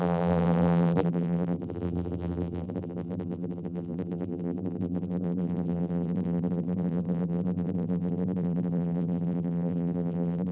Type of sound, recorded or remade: remade